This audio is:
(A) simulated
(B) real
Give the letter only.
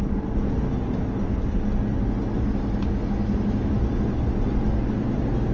B